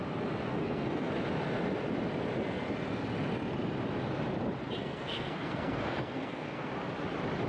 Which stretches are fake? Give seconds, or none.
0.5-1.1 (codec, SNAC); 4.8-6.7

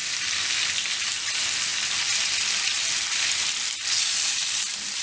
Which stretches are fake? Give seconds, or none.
none

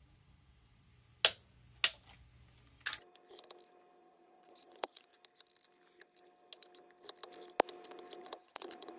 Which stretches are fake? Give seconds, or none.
0.0-0.9 (vocoder, Vocos); 4.0-5.1; 8.2-9.0

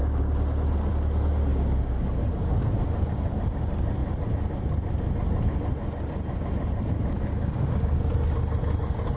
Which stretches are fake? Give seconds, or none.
1.5-3.4 (codec, DAC); 7.1-8.1

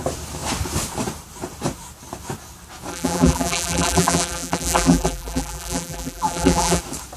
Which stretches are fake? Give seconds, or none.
2.9-6.8 (vocoder, BigVGAN v2)

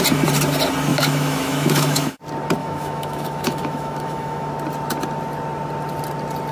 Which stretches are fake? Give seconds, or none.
0.9-2.2 (autoencoder, DAC-VAE); 2.6-4.5

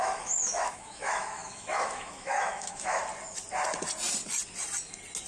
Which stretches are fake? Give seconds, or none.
0.0-3.0 (autoencoder, DAC-VAE)